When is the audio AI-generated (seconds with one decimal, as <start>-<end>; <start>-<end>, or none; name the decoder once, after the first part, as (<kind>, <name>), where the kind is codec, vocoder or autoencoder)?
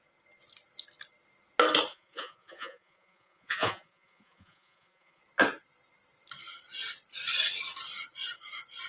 1.9-5.2 (vocoder, Vocos)